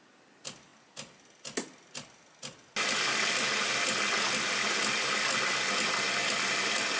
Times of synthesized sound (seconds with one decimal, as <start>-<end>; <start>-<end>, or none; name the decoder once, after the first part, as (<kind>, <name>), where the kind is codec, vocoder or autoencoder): none

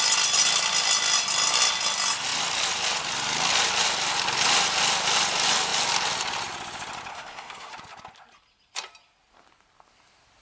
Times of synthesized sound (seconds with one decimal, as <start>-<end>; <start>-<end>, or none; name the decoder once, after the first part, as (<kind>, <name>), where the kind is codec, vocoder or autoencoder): 7.1-7.7 (codec, SNAC)